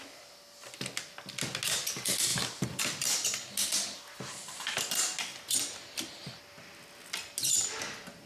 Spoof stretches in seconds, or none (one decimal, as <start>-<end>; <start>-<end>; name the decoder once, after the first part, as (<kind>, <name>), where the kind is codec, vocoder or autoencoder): none